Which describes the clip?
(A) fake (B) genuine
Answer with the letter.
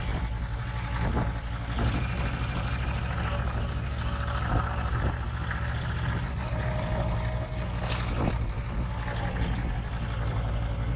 B